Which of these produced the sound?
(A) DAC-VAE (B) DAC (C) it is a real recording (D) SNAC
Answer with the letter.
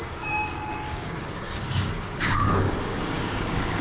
B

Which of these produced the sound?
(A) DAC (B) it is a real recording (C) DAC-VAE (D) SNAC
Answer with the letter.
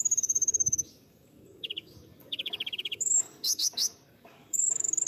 A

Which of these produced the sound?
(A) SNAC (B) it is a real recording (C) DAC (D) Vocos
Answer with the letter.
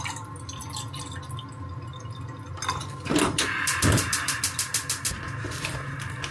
B